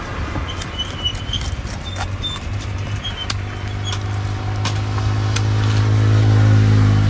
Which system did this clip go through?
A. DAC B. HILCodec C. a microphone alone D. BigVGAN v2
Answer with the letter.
C